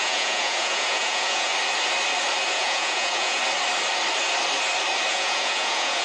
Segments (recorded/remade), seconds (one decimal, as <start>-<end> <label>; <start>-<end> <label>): 0.0-1.5 remade; 1.5-2.5 recorded; 2.5-3.4 remade; 3.4-5.1 recorded; 5.1-6.0 remade